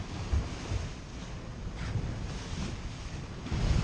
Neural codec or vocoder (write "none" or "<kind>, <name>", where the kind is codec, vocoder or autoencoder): none